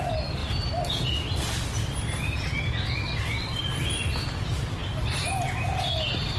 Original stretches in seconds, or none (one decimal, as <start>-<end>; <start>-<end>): 0.0-0.4; 2.5-6.4